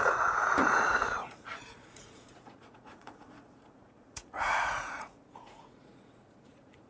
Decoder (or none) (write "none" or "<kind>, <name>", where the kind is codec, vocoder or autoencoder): vocoder, Vocos